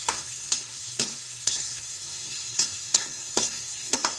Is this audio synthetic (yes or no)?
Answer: yes